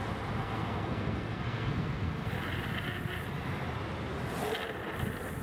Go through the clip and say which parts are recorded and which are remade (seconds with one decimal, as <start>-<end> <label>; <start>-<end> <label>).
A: 0.0-0.4 recorded; 0.4-2.3 remade; 2.3-5.4 recorded